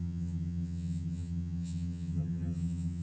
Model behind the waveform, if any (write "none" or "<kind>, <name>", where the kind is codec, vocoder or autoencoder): vocoder, HiFi-GAN